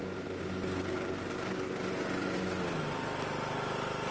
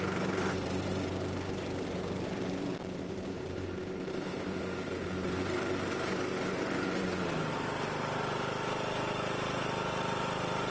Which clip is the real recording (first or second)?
first